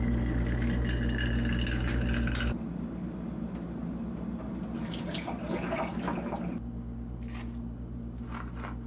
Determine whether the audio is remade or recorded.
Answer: recorded